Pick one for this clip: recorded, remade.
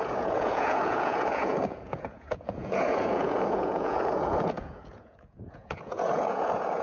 remade